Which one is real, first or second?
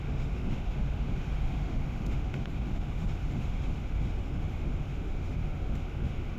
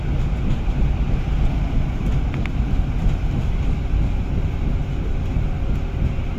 second